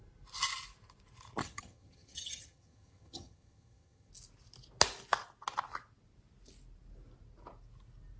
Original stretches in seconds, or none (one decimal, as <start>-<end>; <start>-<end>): 0.0-1.4; 4.1-8.2